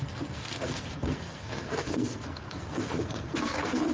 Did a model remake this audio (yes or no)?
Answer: yes